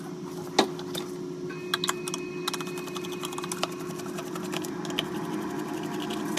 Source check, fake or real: real